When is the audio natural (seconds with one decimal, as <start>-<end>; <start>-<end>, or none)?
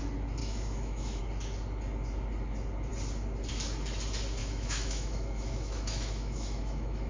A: 0.0-0.4; 1.2-4.4